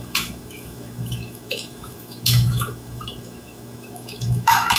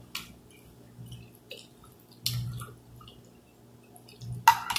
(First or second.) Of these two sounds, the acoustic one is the second